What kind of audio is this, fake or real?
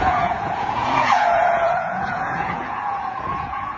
fake